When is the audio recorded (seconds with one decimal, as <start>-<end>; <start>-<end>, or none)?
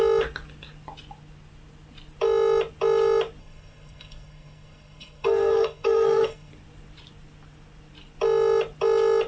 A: 0.0-3.4; 6.5-9.3